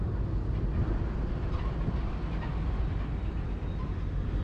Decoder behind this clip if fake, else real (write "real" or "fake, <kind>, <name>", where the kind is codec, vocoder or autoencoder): real